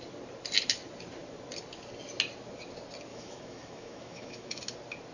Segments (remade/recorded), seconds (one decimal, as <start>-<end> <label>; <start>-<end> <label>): 0.0-3.1 recorded; 3.1-4.6 remade; 4.6-5.1 recorded